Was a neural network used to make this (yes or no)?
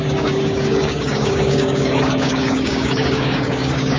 yes